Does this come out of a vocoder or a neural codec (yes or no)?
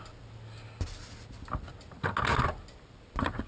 no